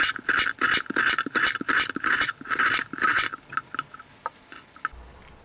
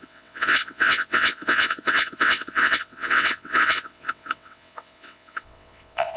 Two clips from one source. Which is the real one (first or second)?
first